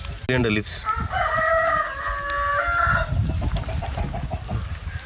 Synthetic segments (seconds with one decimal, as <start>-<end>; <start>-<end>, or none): none